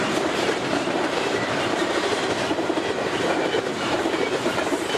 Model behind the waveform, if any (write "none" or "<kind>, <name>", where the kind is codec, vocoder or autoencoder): vocoder, BigVGAN v2